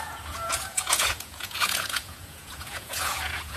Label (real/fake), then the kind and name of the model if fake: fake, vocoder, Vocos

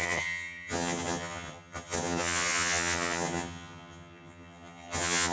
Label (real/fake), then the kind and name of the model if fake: fake, vocoder, HiFi-GAN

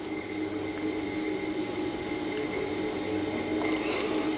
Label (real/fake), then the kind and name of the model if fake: real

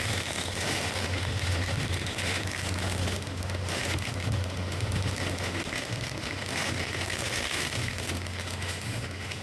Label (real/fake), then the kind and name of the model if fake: fake, autoencoder, DAC-VAE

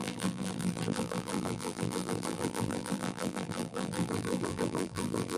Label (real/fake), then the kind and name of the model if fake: fake, vocoder, BigVGAN v2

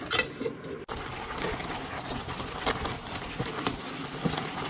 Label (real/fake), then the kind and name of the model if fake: real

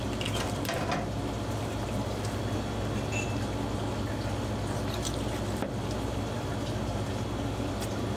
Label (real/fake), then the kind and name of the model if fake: real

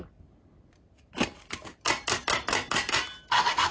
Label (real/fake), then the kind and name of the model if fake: real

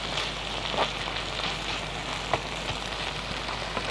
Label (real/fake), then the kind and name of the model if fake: real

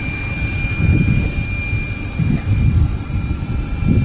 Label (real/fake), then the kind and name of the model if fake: real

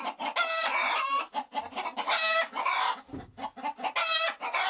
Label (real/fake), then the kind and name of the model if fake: real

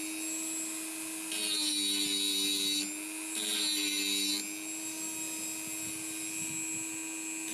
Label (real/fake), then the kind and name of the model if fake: real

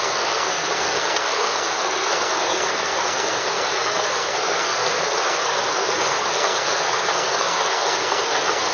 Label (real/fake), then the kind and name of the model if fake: fake, codec, SNAC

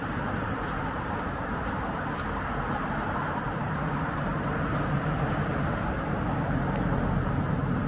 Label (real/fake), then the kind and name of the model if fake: fake, vocoder, BigVGAN v2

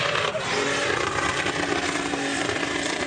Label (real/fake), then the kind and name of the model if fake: fake, vocoder, BigVGAN v2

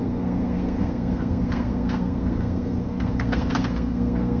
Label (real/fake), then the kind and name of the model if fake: fake, codec, SNAC